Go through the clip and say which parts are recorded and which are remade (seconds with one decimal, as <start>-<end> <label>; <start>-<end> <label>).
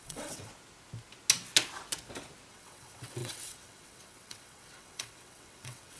0.0-0.5 remade; 0.5-2.5 recorded; 2.5-6.0 remade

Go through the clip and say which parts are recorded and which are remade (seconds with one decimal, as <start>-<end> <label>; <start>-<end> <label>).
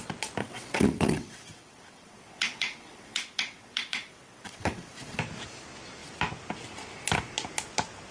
0.0-0.4 recorded; 0.4-5.2 remade; 5.2-8.1 recorded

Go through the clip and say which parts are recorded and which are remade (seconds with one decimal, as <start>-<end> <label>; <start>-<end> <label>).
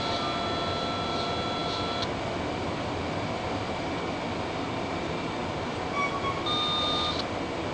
0.0-7.7 recorded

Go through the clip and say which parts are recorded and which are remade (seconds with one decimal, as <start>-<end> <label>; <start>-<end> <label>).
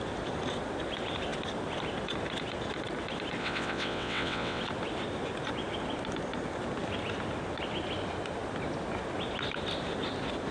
0.0-3.4 recorded; 3.4-4.6 remade; 4.6-10.5 recorded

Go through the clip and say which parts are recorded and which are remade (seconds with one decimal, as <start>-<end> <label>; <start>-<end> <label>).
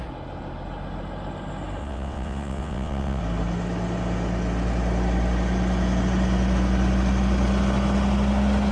0.0-1.8 recorded; 1.8-3.2 remade; 3.2-8.7 recorded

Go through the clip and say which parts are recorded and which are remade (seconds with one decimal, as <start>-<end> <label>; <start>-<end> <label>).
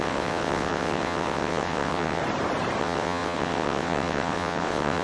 0.0-2.2 remade; 2.2-2.8 recorded; 2.8-5.0 remade